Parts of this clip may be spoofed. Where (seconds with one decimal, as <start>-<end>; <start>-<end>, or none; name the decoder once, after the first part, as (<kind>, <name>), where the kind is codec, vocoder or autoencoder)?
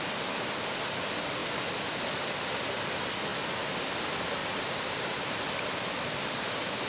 1.4-2.1 (vocoder, BigVGAN v2); 4.4-6.9